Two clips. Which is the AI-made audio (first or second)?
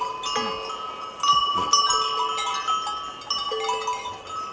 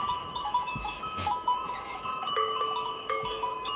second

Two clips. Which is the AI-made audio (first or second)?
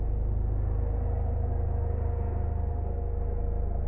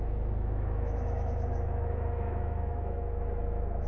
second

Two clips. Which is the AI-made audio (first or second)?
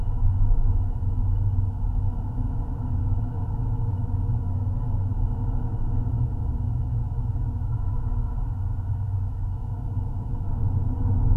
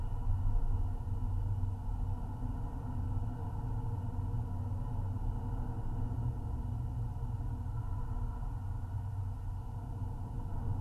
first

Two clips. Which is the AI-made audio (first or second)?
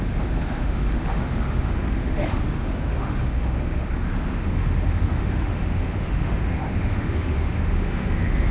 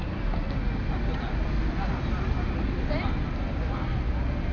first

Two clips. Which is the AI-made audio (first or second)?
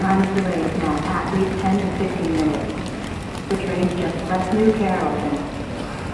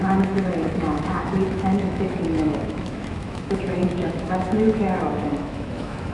second